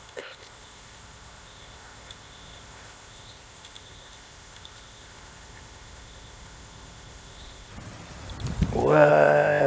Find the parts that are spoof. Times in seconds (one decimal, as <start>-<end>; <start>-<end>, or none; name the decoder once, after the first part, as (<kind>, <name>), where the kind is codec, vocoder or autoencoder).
0.0-7.7 (codec, ZipCodec); 9.1-9.7